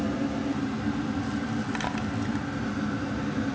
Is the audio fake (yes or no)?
no